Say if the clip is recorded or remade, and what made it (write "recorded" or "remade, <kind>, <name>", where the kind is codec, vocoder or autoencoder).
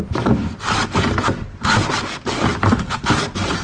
recorded